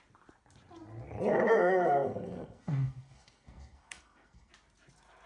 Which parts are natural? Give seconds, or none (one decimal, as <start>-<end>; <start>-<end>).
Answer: 0.0-1.3; 4.5-5.3